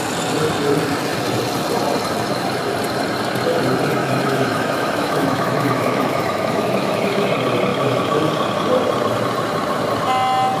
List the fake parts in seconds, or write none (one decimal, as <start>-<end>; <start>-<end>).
4.0-7.3; 7.7-8.3